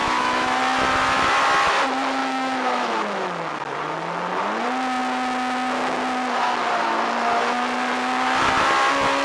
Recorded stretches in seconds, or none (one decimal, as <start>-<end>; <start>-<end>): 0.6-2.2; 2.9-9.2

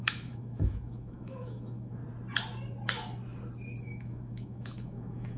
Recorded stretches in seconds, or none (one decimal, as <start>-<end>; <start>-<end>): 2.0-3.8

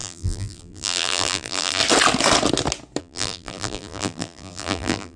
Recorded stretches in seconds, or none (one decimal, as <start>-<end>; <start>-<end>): 1.8-3.0